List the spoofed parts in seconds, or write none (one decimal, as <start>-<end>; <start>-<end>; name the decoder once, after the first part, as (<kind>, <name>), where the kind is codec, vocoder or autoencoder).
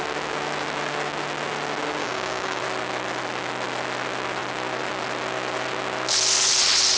2.0-2.6 (codec, DAC)